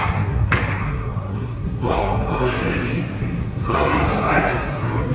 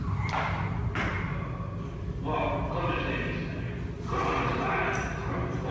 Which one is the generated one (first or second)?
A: first